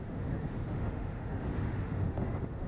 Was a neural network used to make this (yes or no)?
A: yes